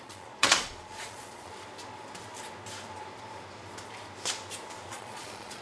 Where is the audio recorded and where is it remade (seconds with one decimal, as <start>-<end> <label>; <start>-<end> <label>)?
0.0-1.5 remade; 1.5-4.9 recorded; 4.9-5.6 remade